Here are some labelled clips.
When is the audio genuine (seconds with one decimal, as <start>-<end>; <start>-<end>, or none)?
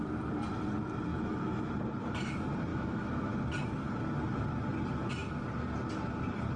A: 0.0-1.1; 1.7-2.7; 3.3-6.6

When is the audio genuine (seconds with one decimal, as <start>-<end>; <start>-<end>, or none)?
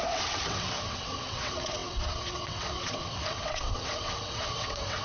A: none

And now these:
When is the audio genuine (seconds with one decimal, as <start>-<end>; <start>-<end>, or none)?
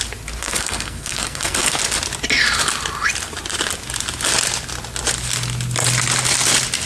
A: 0.0-0.4; 1.8-6.9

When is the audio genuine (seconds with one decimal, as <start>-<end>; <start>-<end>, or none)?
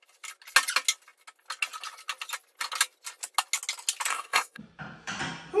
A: 0.0-4.1; 4.6-5.6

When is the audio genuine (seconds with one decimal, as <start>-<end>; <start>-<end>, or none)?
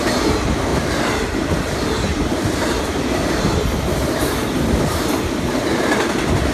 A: 0.0-0.7; 3.1-6.5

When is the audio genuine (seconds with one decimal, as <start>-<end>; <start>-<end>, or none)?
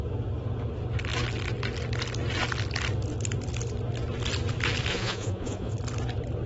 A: 0.0-4.9; 5.7-6.5